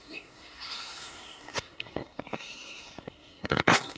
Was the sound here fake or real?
fake